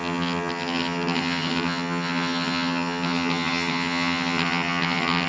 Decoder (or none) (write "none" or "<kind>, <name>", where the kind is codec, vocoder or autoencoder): vocoder, HiFi-GAN